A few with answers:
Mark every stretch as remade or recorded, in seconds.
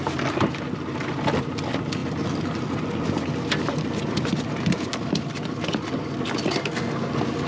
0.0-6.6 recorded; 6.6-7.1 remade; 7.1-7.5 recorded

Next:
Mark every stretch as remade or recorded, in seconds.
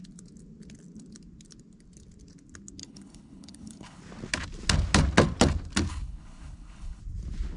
0.0-2.8 recorded; 2.8-4.0 remade; 4.0-5.9 recorded; 5.9-7.0 remade; 7.0-7.6 recorded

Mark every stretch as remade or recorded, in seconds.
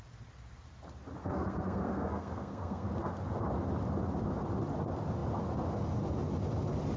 0.0-1.2 recorded; 1.2-2.9 remade; 2.9-7.0 recorded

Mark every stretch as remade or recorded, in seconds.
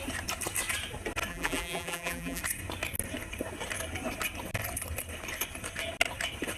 0.0-1.3 recorded; 1.3-2.4 remade; 2.4-6.6 recorded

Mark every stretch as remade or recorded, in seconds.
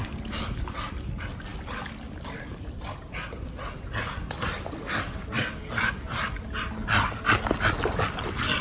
0.0-8.6 recorded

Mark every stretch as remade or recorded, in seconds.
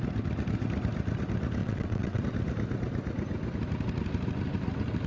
0.0-1.6 recorded; 1.6-2.2 remade; 2.2-5.1 recorded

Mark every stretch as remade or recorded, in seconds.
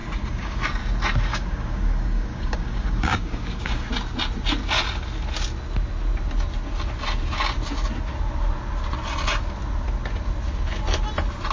0.0-0.6 remade; 0.6-1.3 recorded; 1.3-3.9 remade; 3.9-11.5 recorded